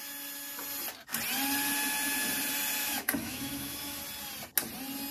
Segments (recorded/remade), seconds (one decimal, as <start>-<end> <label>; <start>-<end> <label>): 0.0-2.8 recorded; 2.8-4.0 remade; 4.0-5.1 recorded